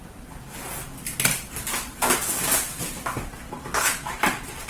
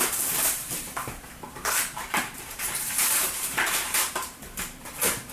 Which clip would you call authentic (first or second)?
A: first